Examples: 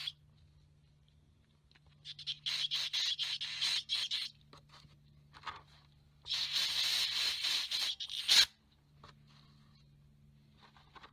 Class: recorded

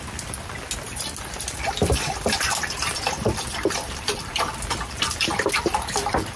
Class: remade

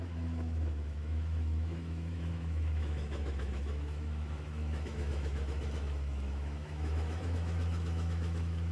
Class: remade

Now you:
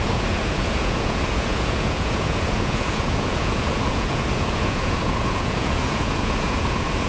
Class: remade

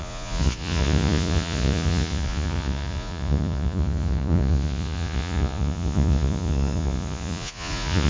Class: remade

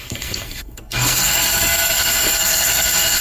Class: remade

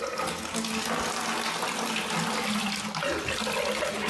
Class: recorded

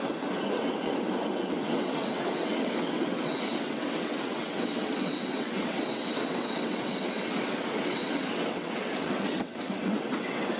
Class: remade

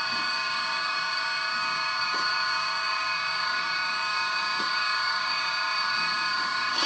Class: remade